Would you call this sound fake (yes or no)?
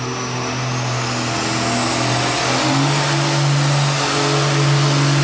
no